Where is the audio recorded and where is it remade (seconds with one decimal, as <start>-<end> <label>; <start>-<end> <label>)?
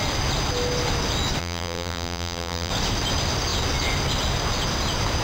0.0-1.4 recorded; 1.4-2.7 remade; 2.7-5.2 recorded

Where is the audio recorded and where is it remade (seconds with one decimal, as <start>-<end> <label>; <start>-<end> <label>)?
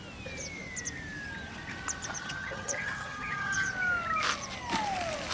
0.0-2.1 recorded; 2.1-3.7 remade; 3.7-5.3 recorded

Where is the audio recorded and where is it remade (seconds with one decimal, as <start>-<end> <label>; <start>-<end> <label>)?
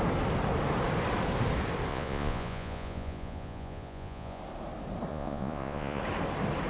0.0-1.9 recorded; 1.9-4.4 remade; 4.4-5.1 recorded; 5.1-6.0 remade; 6.0-6.7 recorded